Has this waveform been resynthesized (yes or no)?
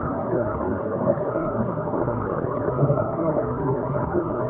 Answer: yes